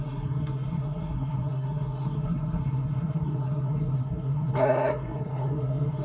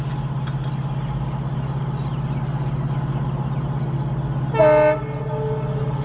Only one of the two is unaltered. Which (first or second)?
second